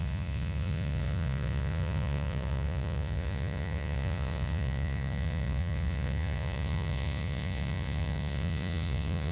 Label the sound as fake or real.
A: fake